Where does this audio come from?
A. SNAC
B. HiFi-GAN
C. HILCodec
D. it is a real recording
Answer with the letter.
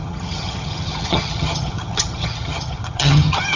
B